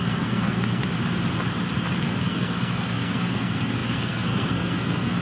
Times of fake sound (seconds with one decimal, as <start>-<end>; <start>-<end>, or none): 0.0-0.8; 2.0-5.2